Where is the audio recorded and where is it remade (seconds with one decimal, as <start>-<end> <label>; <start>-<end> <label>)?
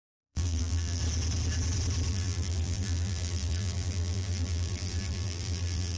0.0-1.0 remade; 1.0-2.1 recorded; 2.1-6.0 remade